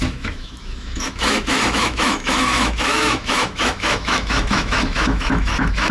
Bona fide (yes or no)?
no